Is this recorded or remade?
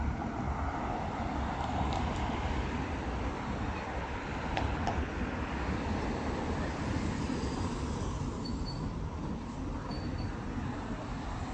recorded